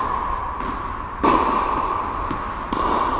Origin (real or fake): real